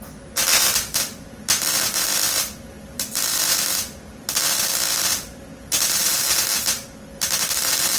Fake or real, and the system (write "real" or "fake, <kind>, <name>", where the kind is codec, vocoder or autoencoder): real